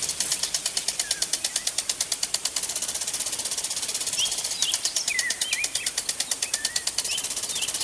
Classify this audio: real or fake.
real